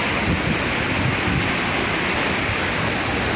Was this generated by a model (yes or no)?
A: no